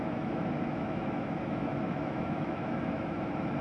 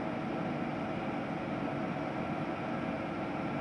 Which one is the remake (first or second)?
first